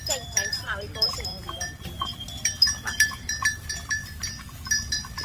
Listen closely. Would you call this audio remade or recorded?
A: remade